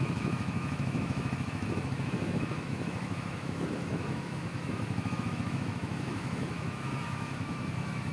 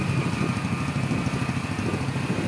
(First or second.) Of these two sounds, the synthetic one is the first